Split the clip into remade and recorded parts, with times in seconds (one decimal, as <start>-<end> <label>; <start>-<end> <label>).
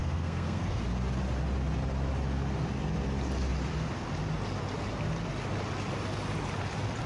0.0-0.8 remade; 0.8-7.1 recorded